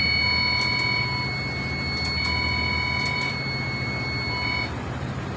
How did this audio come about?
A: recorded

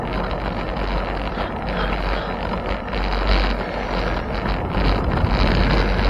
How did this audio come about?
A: recorded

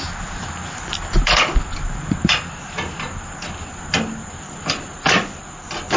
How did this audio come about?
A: recorded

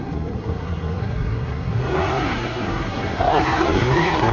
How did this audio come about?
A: remade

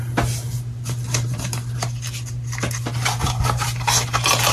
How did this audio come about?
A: recorded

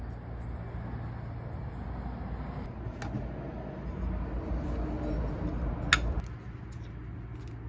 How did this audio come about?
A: recorded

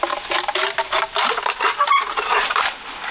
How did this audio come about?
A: recorded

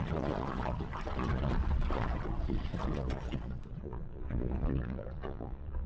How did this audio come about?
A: remade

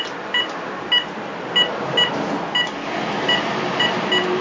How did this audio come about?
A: recorded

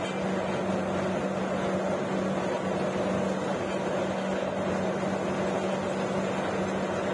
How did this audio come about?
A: recorded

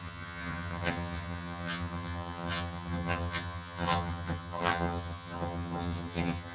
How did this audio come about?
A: remade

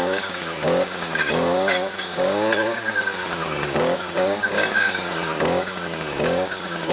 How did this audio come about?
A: remade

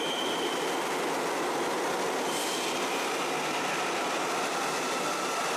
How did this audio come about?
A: recorded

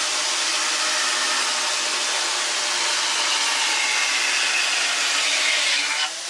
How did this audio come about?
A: recorded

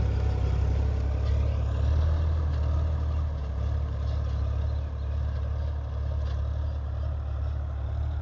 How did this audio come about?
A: recorded